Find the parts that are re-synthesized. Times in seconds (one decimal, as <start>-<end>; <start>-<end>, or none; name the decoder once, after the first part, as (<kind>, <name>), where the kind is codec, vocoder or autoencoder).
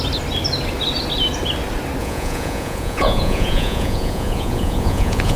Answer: 2.0-5.4 (vocoder, Vocos)